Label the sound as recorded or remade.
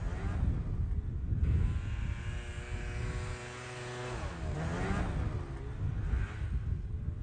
recorded